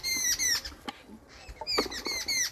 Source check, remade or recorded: recorded